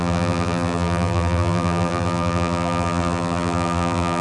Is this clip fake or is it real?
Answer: fake